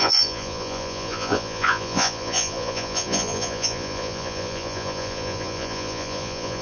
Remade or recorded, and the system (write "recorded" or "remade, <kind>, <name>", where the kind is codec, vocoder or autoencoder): remade, vocoder, Vocos